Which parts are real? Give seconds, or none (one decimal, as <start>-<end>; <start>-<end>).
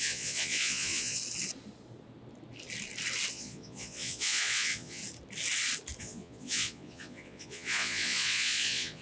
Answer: 1.2-3.3; 5.0-6.0